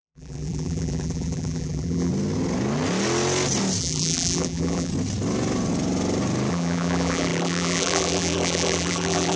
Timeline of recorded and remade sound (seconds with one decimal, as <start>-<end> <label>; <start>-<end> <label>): 0.0-2.1 remade; 2.1-3.8 recorded; 3.8-4.9 remade; 4.9-6.5 recorded; 6.5-9.4 remade

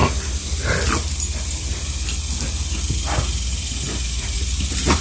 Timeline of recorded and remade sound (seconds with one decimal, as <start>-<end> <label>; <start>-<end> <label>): 0.0-3.5 recorded; 3.5-5.0 remade

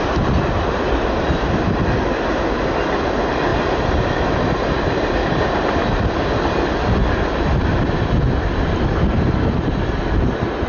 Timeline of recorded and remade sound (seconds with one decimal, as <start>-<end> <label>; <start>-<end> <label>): 0.0-3.5 recorded; 3.5-6.0 remade; 6.0-10.7 recorded

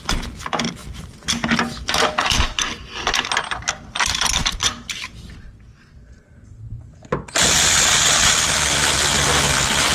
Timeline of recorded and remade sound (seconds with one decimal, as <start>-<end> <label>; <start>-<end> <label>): 0.0-9.9 recorded

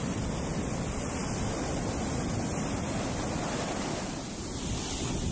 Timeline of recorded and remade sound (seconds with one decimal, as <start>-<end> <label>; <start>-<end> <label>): 0.0-5.3 remade

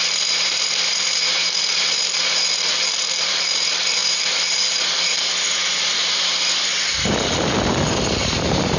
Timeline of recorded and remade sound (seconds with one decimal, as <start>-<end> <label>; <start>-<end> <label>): 0.0-6.7 remade; 6.7-7.9 recorded; 7.9-8.8 remade

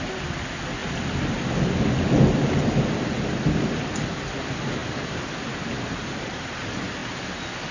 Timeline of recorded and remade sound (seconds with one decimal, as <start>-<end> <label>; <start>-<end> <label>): 0.0-4.8 recorded; 4.8-6.6 remade; 6.6-7.7 recorded